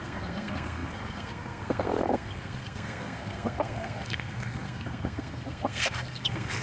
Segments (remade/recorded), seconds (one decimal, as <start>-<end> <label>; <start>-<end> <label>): 0.0-6.6 remade